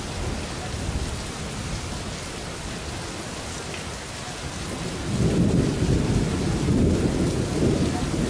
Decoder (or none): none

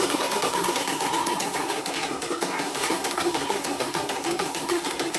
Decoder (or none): codec, SNAC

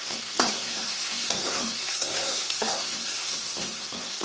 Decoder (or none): codec, SNAC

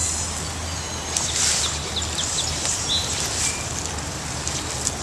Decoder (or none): none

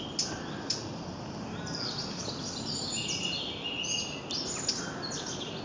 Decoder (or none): none